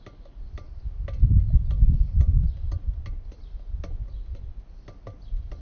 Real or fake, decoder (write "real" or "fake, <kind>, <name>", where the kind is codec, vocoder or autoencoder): real